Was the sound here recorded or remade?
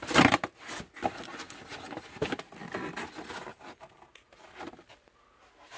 recorded